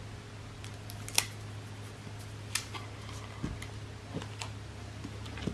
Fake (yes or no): no